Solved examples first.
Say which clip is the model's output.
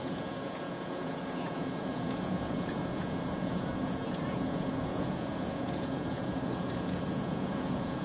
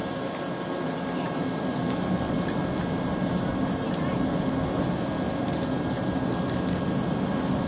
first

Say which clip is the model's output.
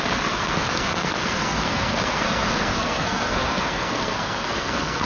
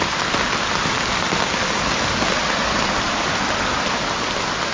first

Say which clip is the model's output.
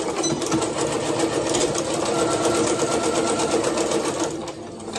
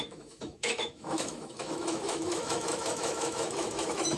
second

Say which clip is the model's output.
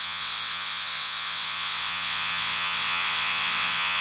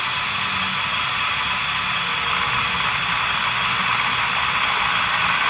first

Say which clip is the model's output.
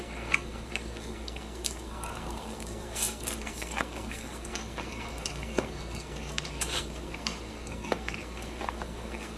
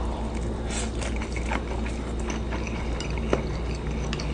first